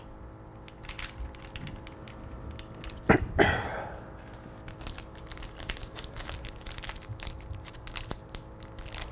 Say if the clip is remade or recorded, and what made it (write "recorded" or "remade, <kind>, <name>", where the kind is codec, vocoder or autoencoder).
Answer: recorded